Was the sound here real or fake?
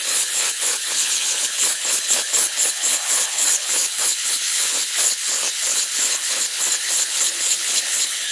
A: fake